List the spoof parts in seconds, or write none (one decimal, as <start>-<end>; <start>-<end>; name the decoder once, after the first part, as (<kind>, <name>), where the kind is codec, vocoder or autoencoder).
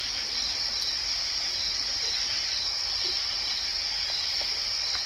none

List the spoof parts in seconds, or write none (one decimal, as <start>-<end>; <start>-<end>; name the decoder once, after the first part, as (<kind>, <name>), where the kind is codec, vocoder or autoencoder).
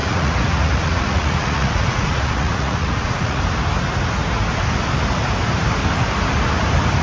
0.0-3.4 (vocoder, Vocos)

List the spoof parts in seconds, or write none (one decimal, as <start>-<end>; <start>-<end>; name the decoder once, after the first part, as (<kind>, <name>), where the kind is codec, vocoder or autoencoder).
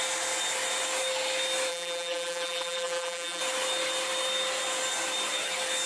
1.7-3.4 (vocoder, BigVGAN v2)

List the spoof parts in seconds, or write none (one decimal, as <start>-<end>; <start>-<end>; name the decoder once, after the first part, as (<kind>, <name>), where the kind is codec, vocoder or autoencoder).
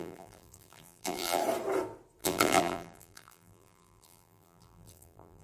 0.0-1.4 (vocoder, BigVGAN v2); 2.2-5.4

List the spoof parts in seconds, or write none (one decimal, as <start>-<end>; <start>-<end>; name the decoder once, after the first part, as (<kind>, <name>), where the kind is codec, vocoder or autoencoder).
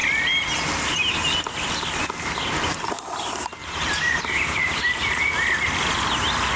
3.6-5.2 (vocoder, BigVGAN v2)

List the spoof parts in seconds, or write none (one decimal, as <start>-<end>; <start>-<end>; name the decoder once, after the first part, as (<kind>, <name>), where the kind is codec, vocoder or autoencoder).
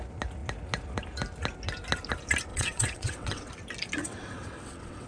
2.5-3.5 (vocoder, WaveNeXt); 4.0-5.1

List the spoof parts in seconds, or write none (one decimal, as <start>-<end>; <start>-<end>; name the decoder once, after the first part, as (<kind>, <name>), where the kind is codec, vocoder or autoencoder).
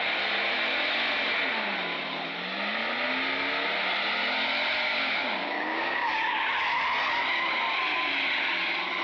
4.8-6.5 (codec, DAC)